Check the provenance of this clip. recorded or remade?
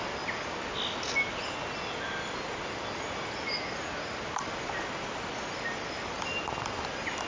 recorded